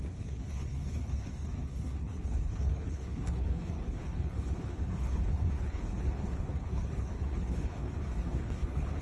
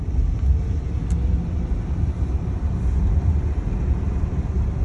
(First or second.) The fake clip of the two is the first